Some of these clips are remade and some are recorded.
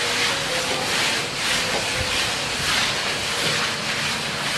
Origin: recorded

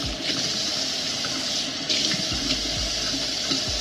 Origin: recorded